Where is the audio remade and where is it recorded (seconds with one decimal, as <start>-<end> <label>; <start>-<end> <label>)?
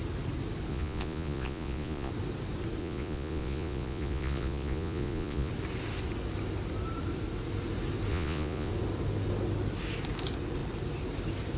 0.0-0.7 recorded; 0.7-2.1 remade; 2.1-2.8 recorded; 2.8-5.5 remade; 5.5-8.1 recorded; 8.1-8.7 remade; 8.7-11.6 recorded